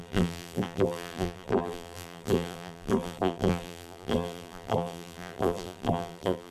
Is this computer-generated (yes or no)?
yes